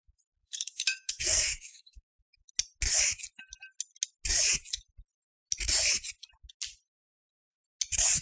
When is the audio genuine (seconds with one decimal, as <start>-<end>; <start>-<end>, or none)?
0.0-0.4; 2.2-8.2